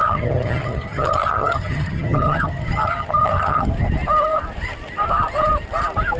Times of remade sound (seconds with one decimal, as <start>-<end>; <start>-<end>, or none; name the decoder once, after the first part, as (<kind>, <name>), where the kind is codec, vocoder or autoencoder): 0.0-3.7 (vocoder, HiFi-GAN)